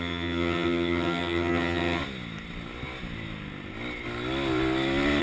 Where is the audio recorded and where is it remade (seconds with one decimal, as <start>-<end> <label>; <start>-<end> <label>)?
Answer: 0.0-2.0 remade; 2.0-5.2 recorded